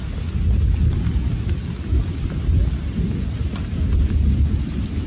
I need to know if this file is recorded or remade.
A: recorded